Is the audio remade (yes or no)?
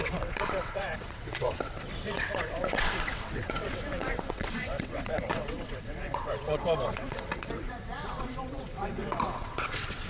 yes